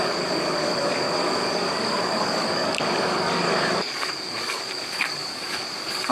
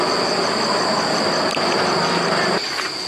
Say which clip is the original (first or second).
second